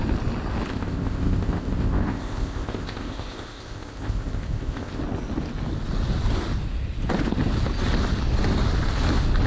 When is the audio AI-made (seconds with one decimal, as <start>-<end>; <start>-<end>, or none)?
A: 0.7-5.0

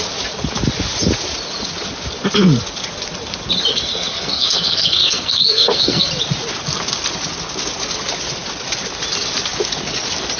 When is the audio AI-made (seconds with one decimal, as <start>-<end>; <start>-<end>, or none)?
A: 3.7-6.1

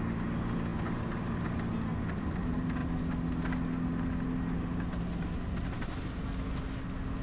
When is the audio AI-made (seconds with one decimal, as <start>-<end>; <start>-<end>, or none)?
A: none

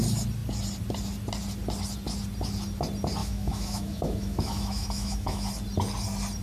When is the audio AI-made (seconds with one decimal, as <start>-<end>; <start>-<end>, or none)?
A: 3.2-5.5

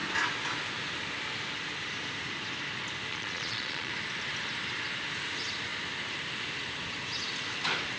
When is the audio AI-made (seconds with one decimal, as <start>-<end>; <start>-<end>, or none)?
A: 3.1-3.9

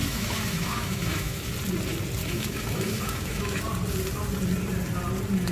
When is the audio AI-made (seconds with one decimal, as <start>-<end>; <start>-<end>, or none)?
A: 0.0-1.5; 2.2-3.6